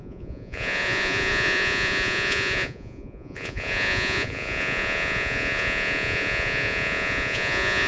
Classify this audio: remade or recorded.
remade